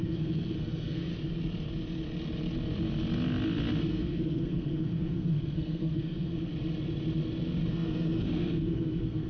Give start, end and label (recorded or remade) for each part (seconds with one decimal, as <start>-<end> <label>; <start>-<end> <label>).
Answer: 0.0-1.1 remade; 1.1-3.9 recorded; 3.9-6.5 remade; 6.5-7.7 recorded; 7.7-9.3 remade